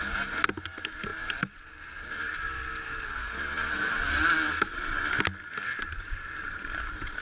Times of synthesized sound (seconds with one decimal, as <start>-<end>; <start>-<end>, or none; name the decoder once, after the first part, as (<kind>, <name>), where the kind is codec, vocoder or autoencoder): none